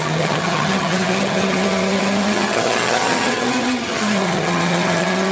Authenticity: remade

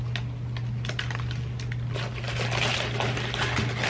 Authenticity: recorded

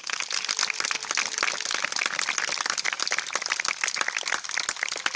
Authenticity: recorded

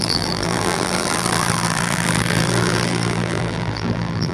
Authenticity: remade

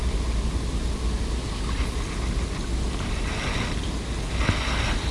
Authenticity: recorded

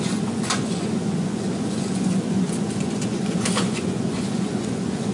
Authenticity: remade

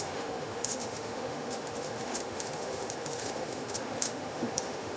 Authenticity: remade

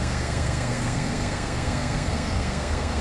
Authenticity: remade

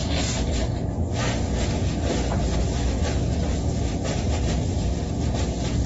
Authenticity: recorded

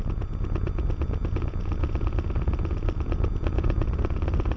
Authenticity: remade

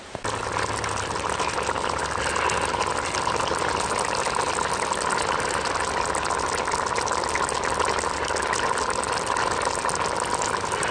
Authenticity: recorded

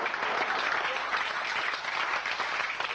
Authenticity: recorded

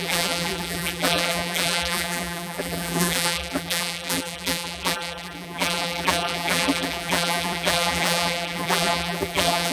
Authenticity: remade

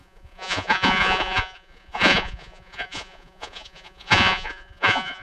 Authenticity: remade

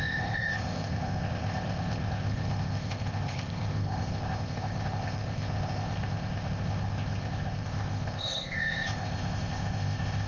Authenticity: remade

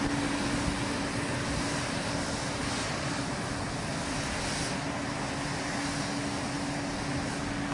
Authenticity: recorded